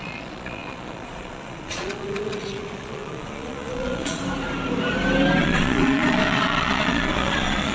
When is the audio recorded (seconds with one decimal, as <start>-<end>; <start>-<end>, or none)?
4.2-5.4

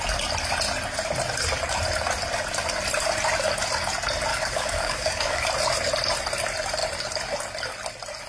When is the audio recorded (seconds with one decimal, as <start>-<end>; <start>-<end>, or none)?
0.0-4.3; 5.4-8.3

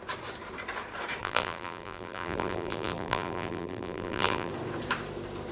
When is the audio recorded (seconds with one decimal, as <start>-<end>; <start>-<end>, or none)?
0.0-1.2; 4.5-5.5

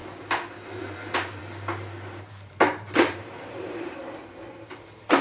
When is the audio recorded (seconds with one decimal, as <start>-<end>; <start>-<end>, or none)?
0.0-0.8; 1.4-2.2; 4.0-4.5

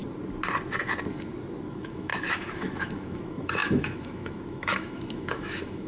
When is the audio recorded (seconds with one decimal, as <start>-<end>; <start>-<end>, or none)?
0.0-1.7

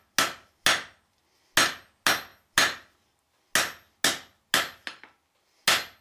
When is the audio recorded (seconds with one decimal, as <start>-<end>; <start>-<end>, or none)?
0.0-6.0

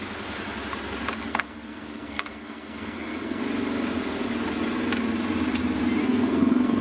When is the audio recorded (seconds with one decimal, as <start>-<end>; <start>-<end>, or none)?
0.0-1.3; 3.4-6.0

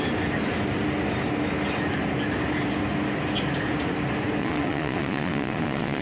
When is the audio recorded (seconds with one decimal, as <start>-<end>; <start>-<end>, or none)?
0.0-4.4